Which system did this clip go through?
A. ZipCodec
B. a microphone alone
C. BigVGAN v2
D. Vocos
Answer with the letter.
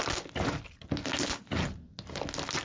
B